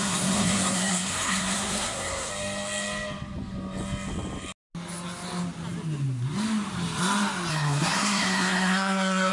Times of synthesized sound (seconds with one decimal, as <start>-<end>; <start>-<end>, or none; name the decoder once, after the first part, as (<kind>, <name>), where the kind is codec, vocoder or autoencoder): 0.0-2.3 (codec, SNAC); 7.5-9.3